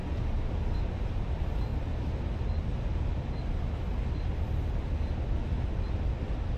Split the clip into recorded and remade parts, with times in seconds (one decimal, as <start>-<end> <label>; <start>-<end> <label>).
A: 0.0-6.6 recorded